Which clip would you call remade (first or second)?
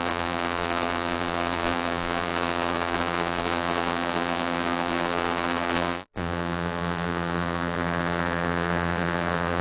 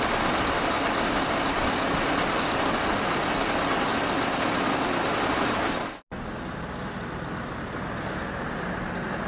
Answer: first